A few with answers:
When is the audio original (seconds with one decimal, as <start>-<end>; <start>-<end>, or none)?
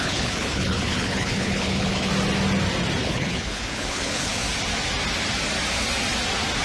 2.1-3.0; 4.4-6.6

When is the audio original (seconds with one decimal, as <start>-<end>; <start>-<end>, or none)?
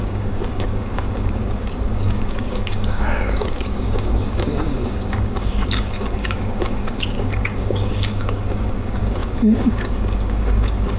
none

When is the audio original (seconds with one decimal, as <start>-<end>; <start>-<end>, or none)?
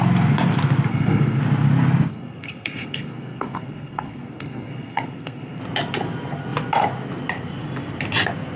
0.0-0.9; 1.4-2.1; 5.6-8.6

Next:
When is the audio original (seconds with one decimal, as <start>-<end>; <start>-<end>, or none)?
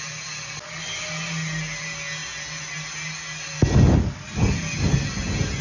0.0-5.6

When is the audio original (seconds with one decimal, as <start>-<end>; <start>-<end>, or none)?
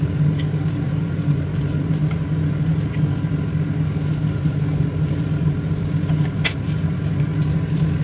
0.0-8.0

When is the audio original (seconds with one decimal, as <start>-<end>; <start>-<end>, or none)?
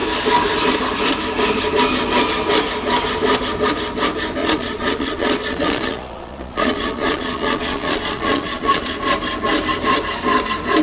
0.0-4.4; 9.0-10.8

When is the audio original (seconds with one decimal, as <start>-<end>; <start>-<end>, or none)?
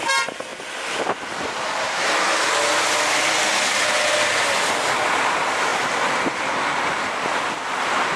0.0-8.2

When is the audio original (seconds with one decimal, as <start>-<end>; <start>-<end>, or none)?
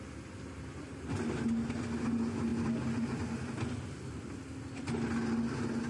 0.0-5.9